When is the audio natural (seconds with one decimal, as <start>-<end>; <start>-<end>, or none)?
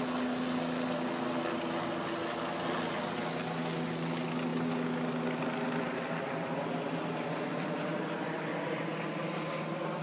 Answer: 0.0-10.0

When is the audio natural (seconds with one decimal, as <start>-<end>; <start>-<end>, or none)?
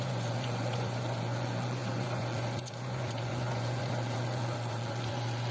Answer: none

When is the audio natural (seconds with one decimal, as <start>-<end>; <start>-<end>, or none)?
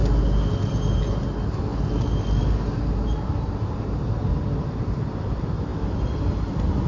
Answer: 0.0-6.9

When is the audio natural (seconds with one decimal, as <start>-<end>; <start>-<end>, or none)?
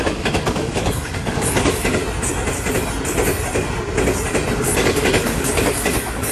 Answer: 2.0-4.6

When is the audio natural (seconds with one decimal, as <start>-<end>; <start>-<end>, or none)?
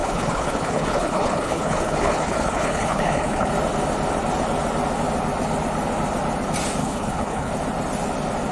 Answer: 3.5-6.8; 7.5-8.5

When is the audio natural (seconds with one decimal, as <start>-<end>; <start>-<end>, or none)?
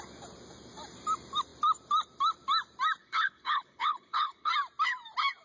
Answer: 0.0-3.0; 4.5-5.4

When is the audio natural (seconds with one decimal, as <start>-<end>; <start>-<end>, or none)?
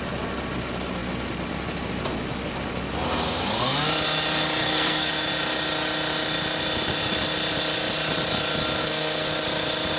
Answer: 0.0-4.6; 5.1-8.8; 9.3-10.0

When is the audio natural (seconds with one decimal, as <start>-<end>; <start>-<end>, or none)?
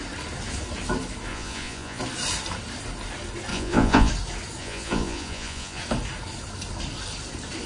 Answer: 0.0-1.3; 2.0-3.5; 4.1-4.6; 5.8-7.7